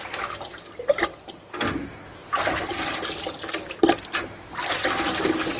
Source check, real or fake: real